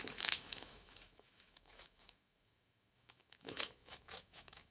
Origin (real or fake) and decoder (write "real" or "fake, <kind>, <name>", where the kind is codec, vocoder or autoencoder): fake, autoencoder, DAC-VAE